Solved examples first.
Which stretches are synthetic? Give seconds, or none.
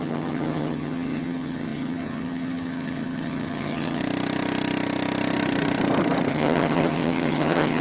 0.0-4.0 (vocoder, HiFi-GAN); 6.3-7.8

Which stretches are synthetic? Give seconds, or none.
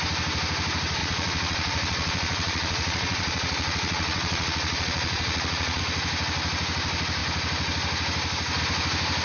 1.0-5.8 (vocoder, Vocos)